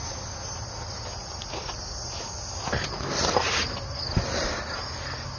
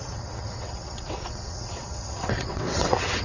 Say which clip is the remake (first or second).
second